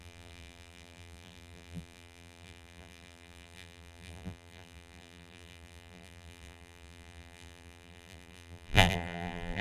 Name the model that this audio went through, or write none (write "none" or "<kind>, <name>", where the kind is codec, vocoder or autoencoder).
vocoder, BigVGAN v2